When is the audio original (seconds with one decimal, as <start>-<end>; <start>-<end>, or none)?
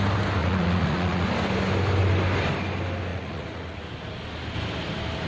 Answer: 0.0-0.4; 1.3-3.1; 3.8-5.3